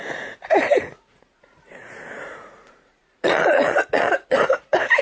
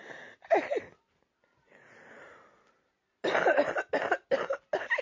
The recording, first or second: second